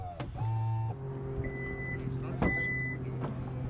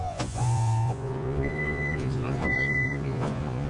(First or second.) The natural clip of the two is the first